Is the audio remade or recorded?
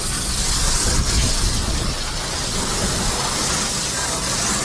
remade